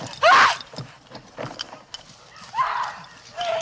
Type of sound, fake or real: real